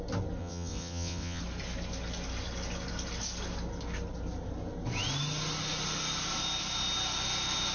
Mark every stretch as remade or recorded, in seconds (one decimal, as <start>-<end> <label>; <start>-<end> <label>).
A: 0.0-0.4 recorded; 0.4-1.4 remade; 1.4-7.7 recorded